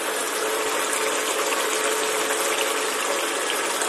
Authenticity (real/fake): real